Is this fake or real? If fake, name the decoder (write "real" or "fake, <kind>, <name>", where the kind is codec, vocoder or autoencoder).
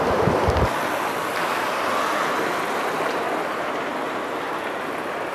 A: real